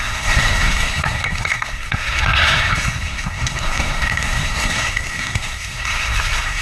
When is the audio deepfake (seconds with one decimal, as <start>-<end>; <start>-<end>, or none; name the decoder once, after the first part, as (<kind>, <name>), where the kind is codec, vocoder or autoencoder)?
0.0-6.6 (codec, SNAC)

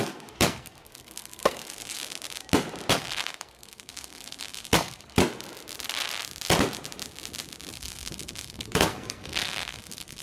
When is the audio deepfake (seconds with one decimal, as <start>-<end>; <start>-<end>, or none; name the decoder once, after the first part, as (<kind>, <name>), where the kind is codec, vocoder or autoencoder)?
0.0-2.0 (codec, SNAC); 2.9-5.2; 7.7-10.2

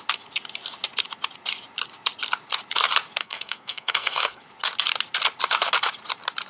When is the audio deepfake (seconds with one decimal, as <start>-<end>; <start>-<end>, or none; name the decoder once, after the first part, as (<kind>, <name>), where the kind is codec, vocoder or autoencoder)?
3.2-4.4 (codec, SNAC)

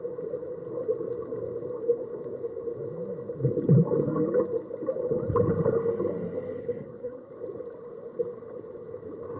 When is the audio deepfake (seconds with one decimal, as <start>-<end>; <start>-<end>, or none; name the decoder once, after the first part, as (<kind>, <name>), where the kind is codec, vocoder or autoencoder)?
6.6-7.3 (codec, SNAC)

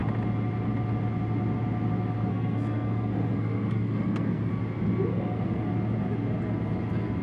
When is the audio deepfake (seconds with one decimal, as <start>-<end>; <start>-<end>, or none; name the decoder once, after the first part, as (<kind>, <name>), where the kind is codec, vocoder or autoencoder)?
2.3-4.5 (codec, SNAC); 5.1-5.7